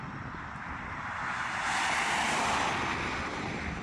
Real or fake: real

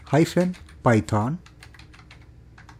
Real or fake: real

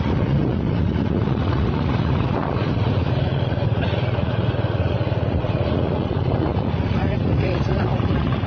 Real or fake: fake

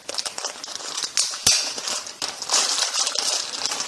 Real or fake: real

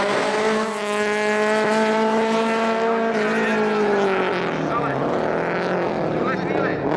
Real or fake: real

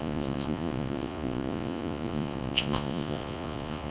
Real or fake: fake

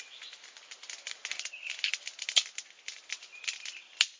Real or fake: real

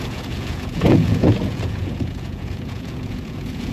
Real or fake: fake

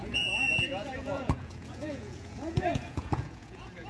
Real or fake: fake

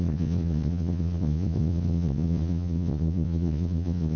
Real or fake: fake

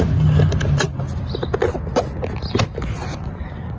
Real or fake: real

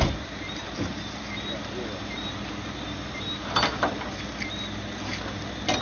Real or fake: real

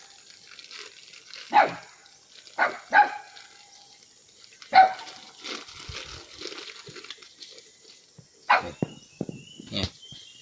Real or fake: real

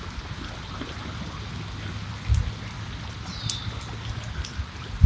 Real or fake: real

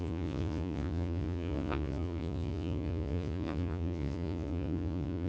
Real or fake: fake